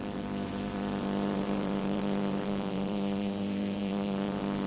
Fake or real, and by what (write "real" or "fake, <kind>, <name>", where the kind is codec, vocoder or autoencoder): fake, vocoder, BigVGAN v2